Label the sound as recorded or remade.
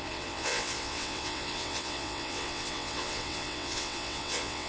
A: remade